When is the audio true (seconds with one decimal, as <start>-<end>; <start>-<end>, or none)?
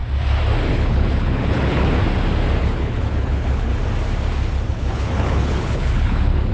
0.0-0.7; 2.0-2.6; 3.7-4.7